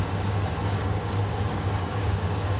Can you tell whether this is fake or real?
fake